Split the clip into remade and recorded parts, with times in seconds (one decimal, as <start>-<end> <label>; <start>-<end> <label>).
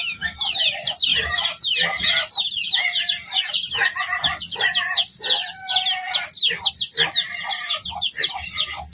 0.0-8.9 recorded